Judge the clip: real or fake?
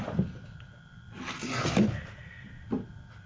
real